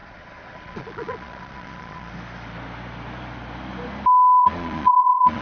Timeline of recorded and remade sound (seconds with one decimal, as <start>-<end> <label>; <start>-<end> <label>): 0.0-2.1 remade; 2.1-4.4 recorded; 4.4-5.4 remade